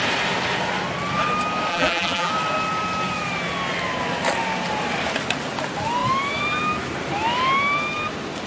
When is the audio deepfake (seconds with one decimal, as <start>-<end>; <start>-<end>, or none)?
1.7-2.3